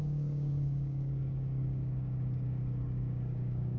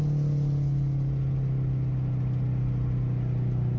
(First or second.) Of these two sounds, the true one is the second